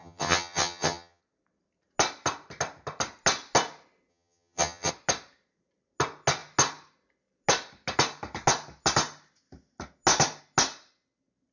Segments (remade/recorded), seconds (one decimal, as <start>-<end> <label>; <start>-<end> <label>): 0.0-1.2 remade; 1.2-4.1 recorded; 4.1-4.9 remade; 4.9-11.5 recorded